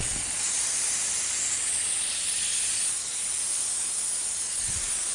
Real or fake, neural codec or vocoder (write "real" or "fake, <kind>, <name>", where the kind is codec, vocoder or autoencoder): real